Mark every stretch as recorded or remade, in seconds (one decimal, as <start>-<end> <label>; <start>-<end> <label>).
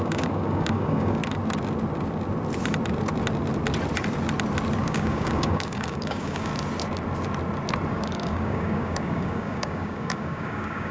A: 0.0-1.2 remade; 1.2-4.8 recorded; 4.8-6.5 remade; 6.5-7.9 recorded; 7.9-10.9 remade